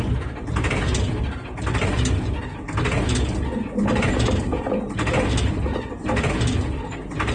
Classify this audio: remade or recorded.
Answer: recorded